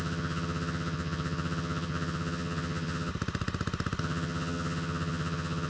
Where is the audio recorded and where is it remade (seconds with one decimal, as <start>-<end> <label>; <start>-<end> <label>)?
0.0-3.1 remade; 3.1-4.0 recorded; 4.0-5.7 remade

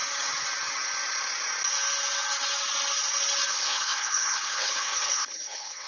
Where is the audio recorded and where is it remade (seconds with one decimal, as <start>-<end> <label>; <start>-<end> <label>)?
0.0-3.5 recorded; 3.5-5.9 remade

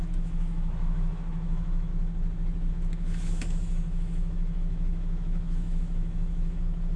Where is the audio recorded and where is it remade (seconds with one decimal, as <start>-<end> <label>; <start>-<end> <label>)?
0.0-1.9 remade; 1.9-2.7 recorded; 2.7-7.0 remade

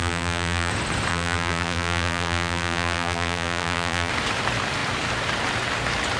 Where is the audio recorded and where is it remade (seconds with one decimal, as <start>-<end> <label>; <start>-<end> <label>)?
0.0-0.7 remade; 0.7-1.1 recorded; 1.1-4.1 remade; 4.1-6.2 recorded

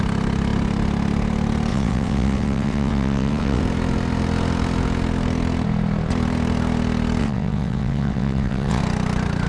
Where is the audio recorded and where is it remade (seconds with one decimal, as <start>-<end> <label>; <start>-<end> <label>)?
0.0-1.7 recorded; 1.7-3.6 remade; 3.6-7.2 recorded; 7.2-8.8 remade; 8.8-9.5 recorded

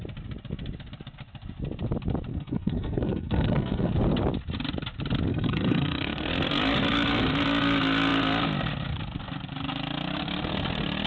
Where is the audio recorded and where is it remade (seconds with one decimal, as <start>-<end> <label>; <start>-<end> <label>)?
0.0-2.3 recorded; 2.3-3.9 remade; 3.9-5.3 recorded; 5.3-6.3 remade; 6.3-11.1 recorded